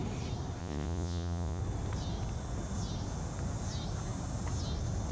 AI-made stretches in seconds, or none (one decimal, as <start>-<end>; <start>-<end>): 0.6-1.6